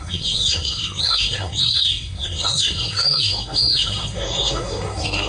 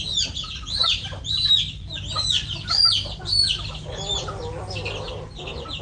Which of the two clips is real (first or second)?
second